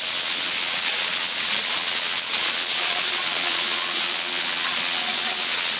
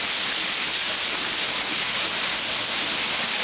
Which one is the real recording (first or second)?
second